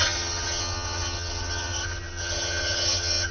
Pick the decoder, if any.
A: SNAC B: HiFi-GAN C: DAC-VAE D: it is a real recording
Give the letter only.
B